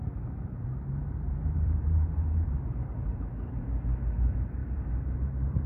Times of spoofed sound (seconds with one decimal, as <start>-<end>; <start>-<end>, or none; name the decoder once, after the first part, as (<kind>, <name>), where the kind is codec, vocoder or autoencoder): 0.0-5.7 (vocoder, BigVGAN v2)